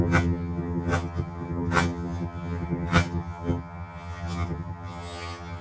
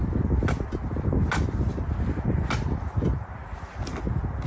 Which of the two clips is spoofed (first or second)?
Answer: first